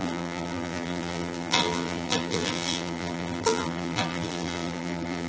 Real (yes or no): no